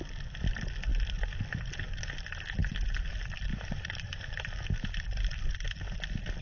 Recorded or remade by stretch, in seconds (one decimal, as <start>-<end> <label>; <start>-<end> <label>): 0.0-3.5 recorded; 3.5-5.4 remade; 5.4-6.4 recorded